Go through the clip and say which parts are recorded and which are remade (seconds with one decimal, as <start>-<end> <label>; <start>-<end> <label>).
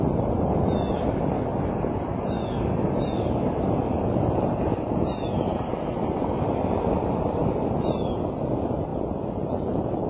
0.0-10.1 recorded